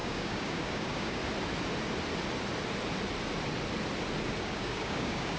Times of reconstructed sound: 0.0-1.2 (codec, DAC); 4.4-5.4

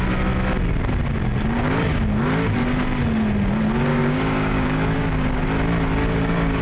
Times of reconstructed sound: 1.4-2.0 (codec, DAC); 3.9-5.4; 6.0-6.6

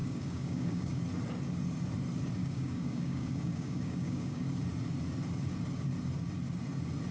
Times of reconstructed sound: 0.0-1.0 (codec, DAC); 2.4-4.4

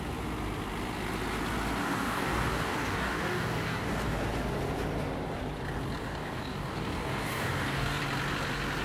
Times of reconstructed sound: 1.8-4.2 (codec, DAC); 6.0-8.0

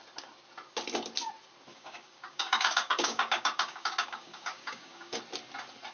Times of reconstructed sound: 1.7-5.2 (codec, DAC)